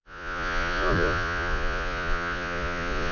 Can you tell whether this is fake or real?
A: fake